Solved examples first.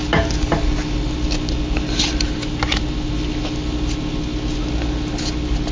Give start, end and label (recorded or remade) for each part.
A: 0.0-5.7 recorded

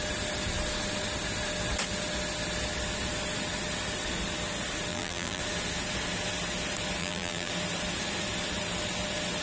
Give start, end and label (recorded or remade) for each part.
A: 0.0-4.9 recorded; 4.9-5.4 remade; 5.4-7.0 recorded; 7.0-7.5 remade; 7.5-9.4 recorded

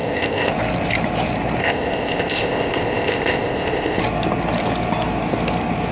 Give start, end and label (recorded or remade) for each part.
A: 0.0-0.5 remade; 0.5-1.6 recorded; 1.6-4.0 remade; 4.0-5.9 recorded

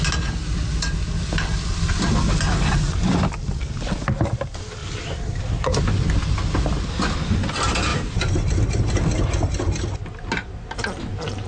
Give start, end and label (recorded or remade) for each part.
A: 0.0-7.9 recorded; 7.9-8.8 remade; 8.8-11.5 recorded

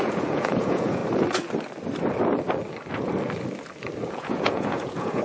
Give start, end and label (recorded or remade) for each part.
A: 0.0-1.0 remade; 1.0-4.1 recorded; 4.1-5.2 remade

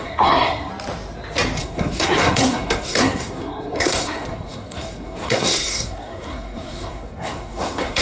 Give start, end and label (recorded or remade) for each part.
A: 0.0-0.7 remade; 0.7-1.6 recorded; 1.6-8.0 remade

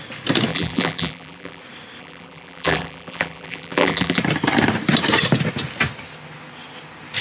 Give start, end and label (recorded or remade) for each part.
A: 0.0-0.5 recorded; 0.5-1.6 remade; 1.6-2.0 recorded; 2.0-4.2 remade; 4.2-7.2 recorded